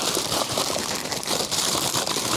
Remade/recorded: remade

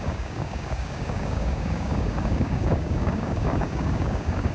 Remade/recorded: remade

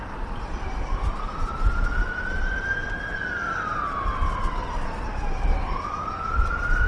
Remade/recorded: recorded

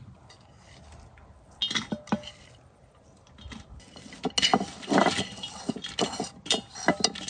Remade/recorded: recorded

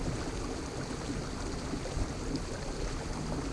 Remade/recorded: recorded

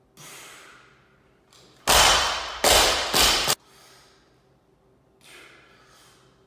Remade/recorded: recorded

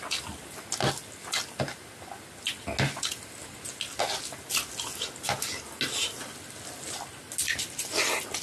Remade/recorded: recorded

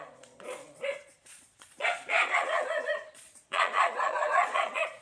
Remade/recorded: remade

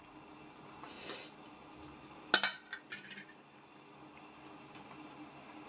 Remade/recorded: recorded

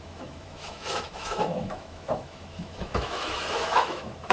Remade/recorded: remade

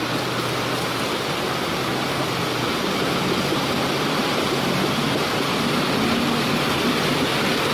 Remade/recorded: recorded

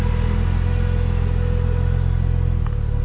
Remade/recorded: recorded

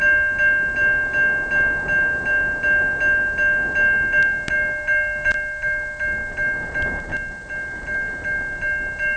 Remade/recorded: recorded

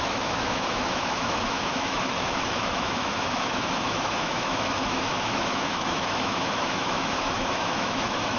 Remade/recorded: remade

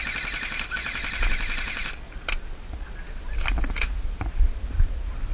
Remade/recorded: recorded